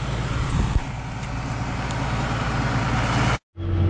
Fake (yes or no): no